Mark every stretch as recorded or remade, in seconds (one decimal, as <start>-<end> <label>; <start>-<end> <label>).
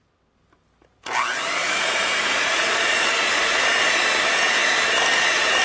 0.0-1.6 recorded; 1.6-3.6 remade; 3.6-5.6 recorded